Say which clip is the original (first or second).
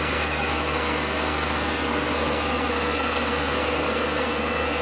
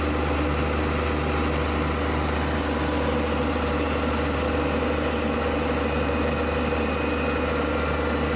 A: second